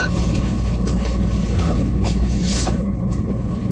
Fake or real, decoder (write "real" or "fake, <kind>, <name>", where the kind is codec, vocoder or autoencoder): fake, codec, HILCodec